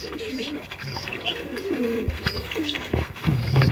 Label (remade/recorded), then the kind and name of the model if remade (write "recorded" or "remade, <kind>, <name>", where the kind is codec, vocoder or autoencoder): remade, codec, SNAC